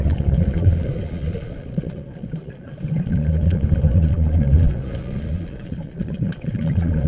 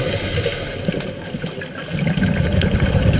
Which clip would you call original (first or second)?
second